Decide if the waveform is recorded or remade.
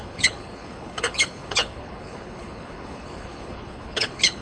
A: remade